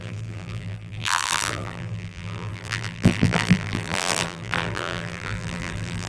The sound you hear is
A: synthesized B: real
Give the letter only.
A